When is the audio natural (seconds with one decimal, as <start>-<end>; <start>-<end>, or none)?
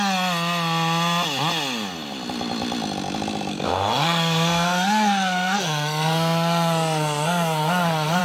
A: 0.0-3.5